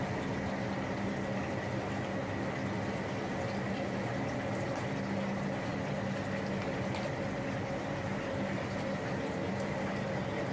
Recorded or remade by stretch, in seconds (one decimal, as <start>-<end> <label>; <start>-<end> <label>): 0.0-10.5 recorded

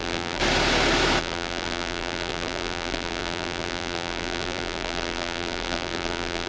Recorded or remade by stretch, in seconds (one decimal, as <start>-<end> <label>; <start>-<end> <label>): 0.0-0.4 remade; 0.4-1.2 recorded; 1.2-6.5 remade

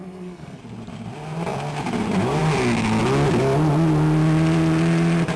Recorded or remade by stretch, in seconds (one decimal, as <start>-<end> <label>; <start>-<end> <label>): 0.0-0.6 remade; 0.6-5.4 recorded

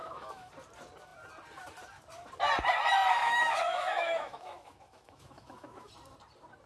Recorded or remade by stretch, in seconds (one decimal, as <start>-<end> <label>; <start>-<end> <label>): 0.0-0.5 remade; 0.5-3.2 recorded; 3.2-5.9 remade; 5.9-6.7 recorded

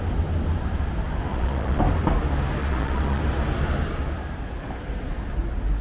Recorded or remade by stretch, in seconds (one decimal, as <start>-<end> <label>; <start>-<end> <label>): 0.0-1.3 recorded; 1.3-1.8 remade; 1.8-2.6 recorded; 2.6-3.2 remade; 3.2-5.8 recorded

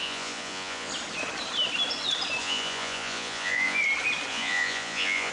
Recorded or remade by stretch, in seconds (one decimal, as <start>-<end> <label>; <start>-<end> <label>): 0.0-0.9 remade; 0.9-2.4 recorded; 2.4-3.8 remade; 3.8-4.3 recorded; 4.3-5.3 remade